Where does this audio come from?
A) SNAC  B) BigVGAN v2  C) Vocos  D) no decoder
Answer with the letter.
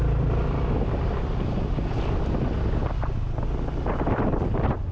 D